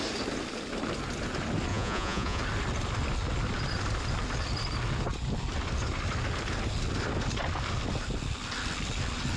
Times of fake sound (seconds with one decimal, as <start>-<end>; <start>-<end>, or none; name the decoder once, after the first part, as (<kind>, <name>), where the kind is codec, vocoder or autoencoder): 1.7-2.4 (vocoder, Vocos)